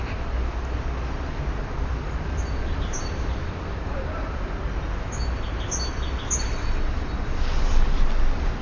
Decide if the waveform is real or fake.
real